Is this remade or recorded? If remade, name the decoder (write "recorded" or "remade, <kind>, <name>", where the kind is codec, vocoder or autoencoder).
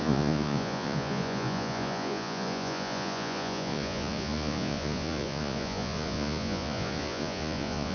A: remade, vocoder, Vocos